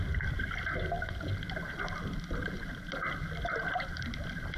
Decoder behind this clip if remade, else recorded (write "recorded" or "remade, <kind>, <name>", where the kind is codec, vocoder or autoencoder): recorded